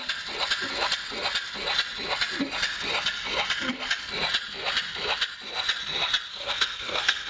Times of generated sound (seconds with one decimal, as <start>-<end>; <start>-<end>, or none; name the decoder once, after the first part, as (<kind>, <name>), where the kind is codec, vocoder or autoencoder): 6.3-7.3 (codec, SNAC)